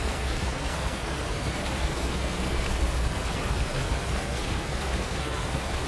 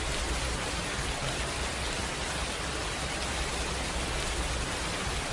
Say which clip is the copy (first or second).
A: first